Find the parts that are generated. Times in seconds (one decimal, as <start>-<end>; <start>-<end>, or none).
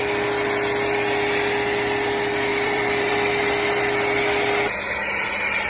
2.5-3.1